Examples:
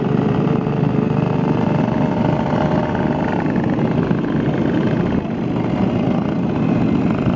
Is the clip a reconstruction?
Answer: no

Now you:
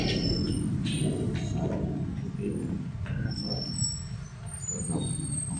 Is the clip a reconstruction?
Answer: no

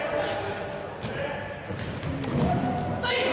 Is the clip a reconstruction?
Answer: no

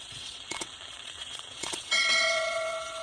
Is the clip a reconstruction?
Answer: yes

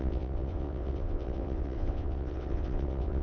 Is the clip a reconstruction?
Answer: yes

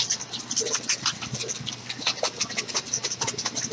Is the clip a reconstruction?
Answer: no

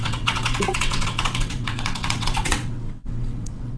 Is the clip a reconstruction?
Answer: yes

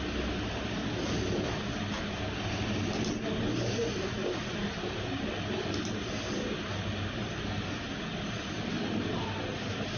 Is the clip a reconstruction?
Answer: no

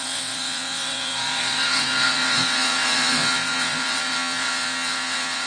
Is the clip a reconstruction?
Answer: yes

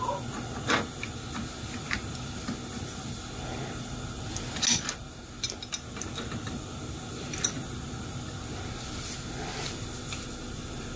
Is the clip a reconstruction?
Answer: no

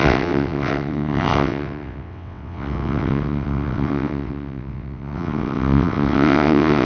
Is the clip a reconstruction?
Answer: yes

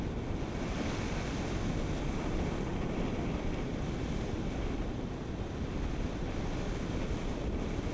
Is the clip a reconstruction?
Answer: no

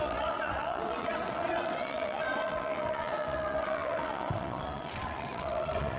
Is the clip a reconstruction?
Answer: yes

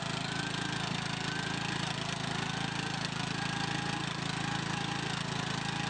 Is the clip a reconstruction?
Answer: no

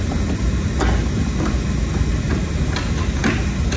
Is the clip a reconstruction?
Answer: no